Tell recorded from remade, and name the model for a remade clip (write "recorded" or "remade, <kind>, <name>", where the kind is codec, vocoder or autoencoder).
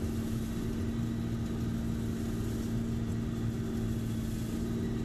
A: recorded